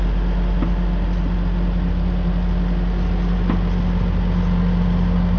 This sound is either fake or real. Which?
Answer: real